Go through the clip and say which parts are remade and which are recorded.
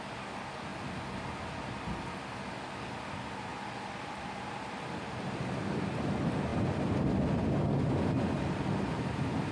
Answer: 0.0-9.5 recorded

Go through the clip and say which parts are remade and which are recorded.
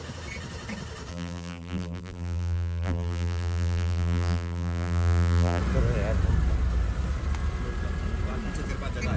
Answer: 0.0-1.1 recorded; 1.1-5.6 remade; 5.6-9.2 recorded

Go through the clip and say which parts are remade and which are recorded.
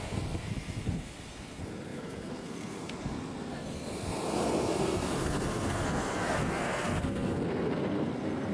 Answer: 0.0-8.5 remade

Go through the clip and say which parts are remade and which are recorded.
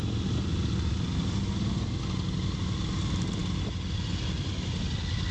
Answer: 0.0-5.3 recorded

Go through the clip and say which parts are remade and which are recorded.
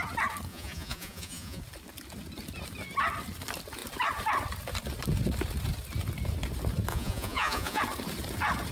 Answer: 0.0-0.5 recorded; 0.5-1.6 remade; 1.6-6.9 recorded; 6.9-7.8 remade; 7.8-8.7 recorded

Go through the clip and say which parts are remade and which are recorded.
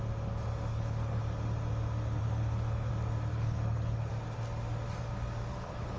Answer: 0.0-0.7 recorded; 0.7-1.2 remade; 1.2-2.2 recorded; 2.2-2.9 remade; 2.9-3.3 recorded; 3.3-4.1 remade; 4.1-5.5 recorded; 5.5-6.0 remade